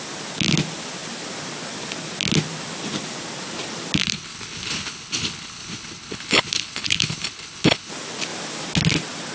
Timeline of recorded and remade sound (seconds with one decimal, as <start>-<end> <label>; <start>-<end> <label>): 0.0-4.0 recorded; 4.0-7.9 remade; 7.9-9.3 recorded